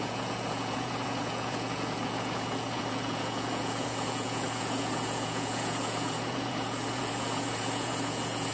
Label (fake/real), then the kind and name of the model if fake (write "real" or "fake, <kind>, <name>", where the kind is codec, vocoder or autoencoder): fake, vocoder, Vocos